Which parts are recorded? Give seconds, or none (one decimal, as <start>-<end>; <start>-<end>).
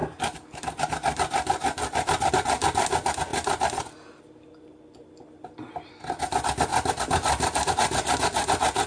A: 2.3-8.9